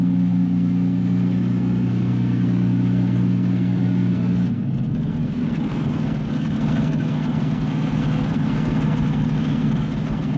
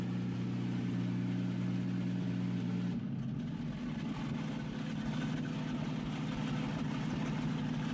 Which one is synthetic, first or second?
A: first